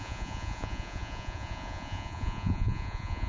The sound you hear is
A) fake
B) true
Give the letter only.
A